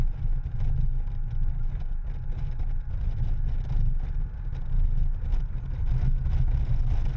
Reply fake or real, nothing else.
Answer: real